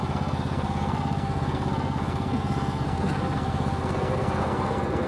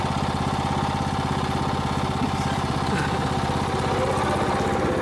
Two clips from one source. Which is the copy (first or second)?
first